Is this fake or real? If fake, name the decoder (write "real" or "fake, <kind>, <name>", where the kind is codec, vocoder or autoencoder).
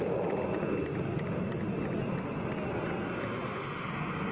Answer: real